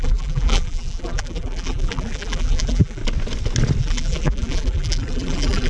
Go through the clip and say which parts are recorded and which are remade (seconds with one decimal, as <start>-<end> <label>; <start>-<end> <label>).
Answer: 0.0-3.0 remade; 3.0-3.8 recorded; 3.8-5.7 remade